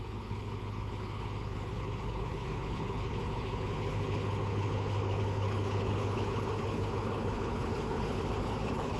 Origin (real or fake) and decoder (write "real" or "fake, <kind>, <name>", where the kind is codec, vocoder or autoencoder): fake, codec, HILCodec